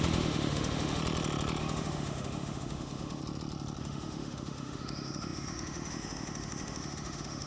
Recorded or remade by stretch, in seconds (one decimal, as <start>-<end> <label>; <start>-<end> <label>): 0.0-1.0 remade; 1.0-1.6 recorded; 1.6-3.2 remade; 3.2-3.8 recorded; 3.8-7.5 remade